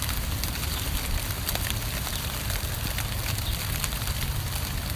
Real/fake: real